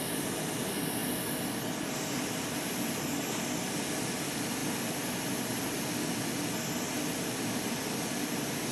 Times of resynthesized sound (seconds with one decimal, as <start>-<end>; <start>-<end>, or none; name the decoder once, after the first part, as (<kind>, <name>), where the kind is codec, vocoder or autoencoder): none